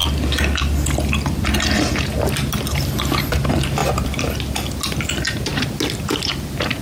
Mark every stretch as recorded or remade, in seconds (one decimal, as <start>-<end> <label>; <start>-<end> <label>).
0.0-6.8 recorded